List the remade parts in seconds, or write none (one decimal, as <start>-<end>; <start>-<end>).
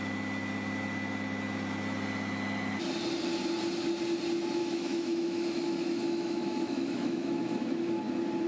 4.6-8.0